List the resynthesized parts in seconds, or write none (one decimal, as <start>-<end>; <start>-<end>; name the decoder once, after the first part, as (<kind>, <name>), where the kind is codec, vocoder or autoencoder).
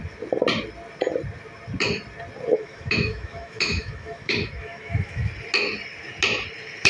2.5-5.3 (autoencoder, DAC-VAE)